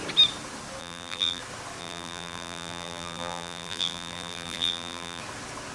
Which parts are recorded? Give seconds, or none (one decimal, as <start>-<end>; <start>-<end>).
0.0-0.8; 1.4-1.8; 5.2-5.7